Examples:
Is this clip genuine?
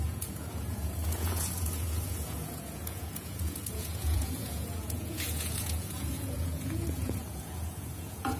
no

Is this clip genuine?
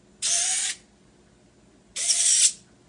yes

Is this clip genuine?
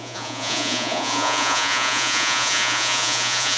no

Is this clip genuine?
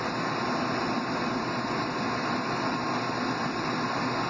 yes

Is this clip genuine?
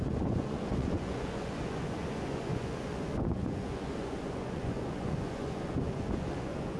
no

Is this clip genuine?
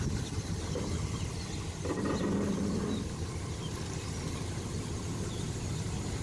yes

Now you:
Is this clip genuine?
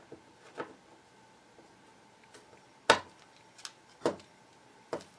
yes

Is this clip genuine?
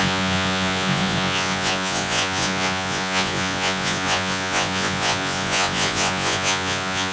no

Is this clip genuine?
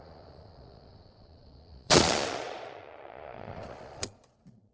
no